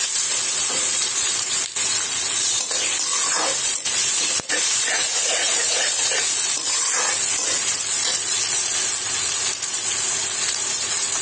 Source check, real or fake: fake